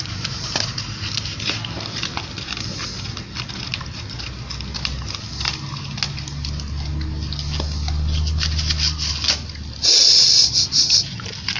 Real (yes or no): yes